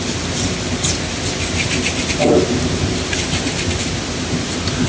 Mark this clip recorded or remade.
recorded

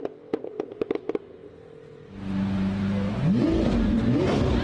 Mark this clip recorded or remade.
recorded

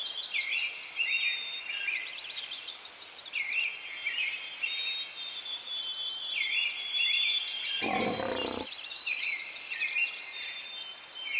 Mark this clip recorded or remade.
remade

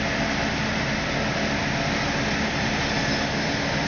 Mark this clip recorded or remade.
recorded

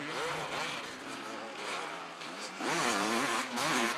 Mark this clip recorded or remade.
remade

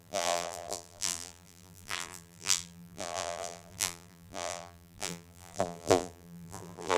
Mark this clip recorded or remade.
remade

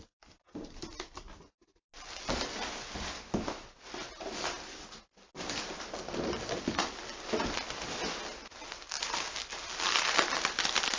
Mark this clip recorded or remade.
recorded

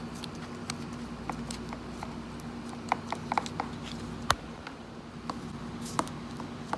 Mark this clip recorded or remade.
recorded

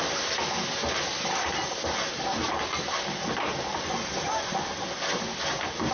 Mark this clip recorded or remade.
recorded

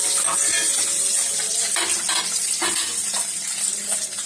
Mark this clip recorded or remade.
recorded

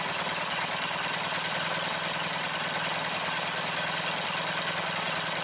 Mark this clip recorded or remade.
recorded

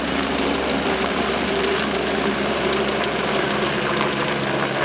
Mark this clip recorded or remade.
remade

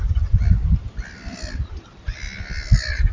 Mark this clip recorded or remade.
recorded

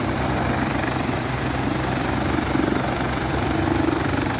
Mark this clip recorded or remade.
remade